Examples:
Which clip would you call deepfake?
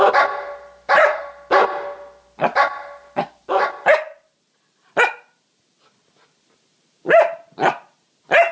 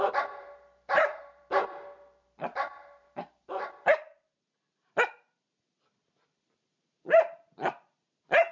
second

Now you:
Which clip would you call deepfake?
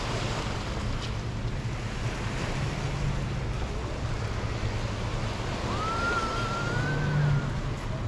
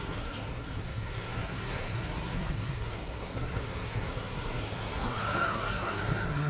second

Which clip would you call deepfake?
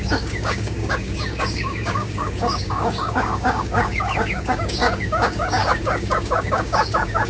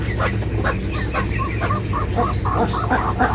first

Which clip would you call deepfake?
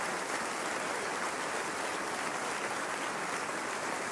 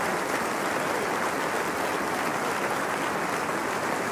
first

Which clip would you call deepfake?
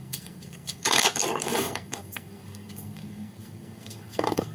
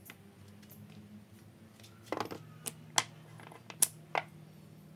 first